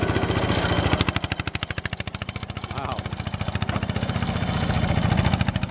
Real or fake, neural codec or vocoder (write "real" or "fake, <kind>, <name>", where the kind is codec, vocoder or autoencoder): real